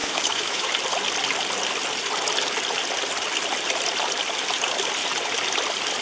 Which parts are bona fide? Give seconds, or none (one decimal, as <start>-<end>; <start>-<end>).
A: 0.7-6.0